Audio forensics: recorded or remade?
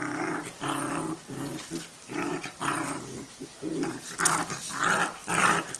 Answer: recorded